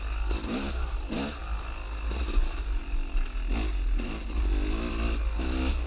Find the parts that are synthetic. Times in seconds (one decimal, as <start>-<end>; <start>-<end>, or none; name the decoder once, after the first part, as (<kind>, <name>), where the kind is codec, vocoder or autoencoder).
none